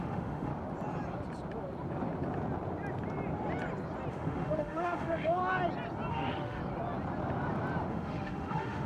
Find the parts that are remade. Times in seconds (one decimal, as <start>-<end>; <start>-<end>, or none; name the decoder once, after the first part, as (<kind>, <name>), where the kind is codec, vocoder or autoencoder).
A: 0.0-0.5 (autoencoder, DAC-VAE); 4.1-5.4; 6.1-6.6; 7.9-8.9

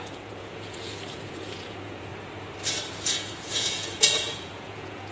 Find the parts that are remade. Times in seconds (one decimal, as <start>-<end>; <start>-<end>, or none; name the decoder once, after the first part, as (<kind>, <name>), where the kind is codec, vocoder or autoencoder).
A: 0.0-2.1 (vocoder, Vocos); 3.1-5.1

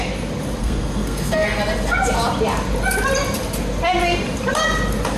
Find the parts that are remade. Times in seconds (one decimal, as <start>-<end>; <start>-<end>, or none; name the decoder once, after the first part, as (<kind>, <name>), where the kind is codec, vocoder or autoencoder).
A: 0.6-1.6 (codec, SNAC)

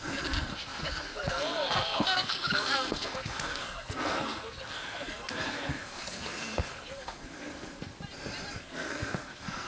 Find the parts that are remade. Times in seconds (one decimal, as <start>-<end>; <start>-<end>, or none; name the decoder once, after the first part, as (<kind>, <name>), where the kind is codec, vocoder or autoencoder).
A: 0.0-7.9 (codec, SNAC); 8.5-9.7

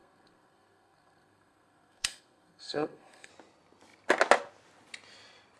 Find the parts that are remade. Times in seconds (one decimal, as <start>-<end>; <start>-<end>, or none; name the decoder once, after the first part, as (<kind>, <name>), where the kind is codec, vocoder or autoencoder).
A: 0.0-3.3 (codec, SNAC)